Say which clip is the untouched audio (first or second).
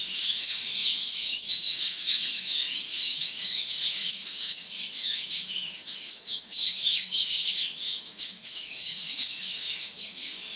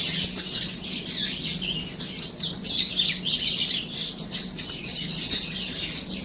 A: second